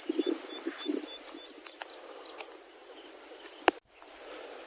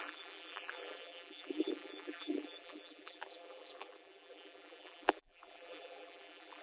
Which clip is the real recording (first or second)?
first